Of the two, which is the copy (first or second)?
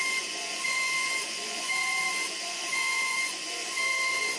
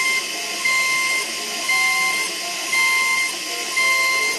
first